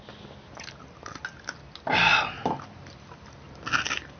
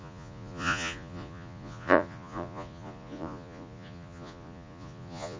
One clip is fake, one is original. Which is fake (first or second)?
second